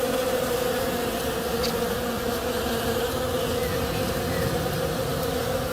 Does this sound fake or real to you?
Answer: real